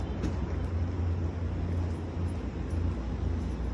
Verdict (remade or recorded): recorded